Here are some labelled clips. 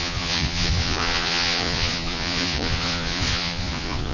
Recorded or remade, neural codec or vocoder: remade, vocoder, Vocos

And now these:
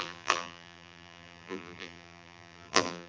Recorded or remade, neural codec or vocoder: remade, vocoder, BigVGAN v2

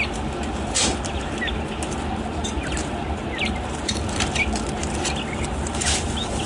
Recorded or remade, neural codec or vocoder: recorded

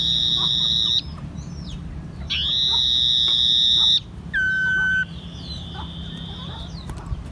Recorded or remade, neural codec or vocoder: recorded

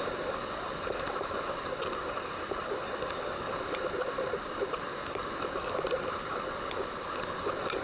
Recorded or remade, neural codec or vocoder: recorded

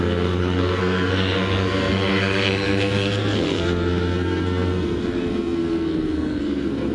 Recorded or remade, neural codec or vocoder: remade, codec, SNAC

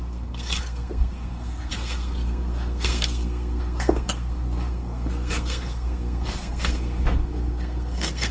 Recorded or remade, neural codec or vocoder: remade, codec, SNAC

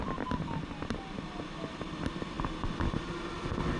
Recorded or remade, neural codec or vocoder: recorded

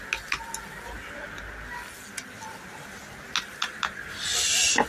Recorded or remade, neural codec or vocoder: recorded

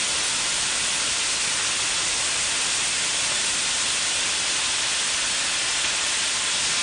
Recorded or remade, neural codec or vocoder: recorded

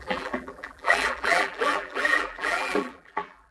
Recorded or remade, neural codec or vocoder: remade, vocoder, BigVGAN v2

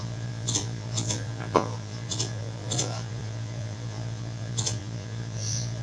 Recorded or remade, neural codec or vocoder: remade, vocoder, Vocos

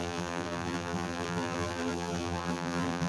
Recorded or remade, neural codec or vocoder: remade, vocoder, BigVGAN v2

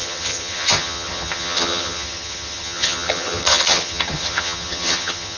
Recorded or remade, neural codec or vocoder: remade, vocoder, HiFi-GAN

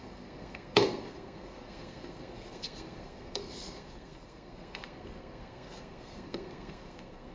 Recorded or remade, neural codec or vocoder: remade, codec, SNAC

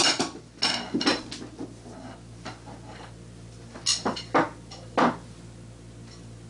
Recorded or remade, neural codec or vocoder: recorded